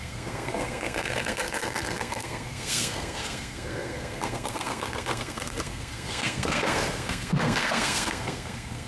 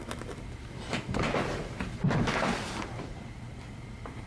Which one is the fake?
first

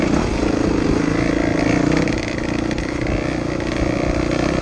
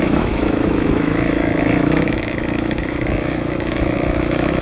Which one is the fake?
second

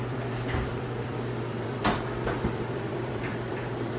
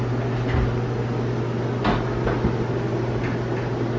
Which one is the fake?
first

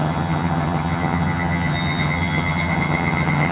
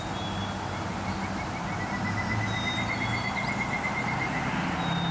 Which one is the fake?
first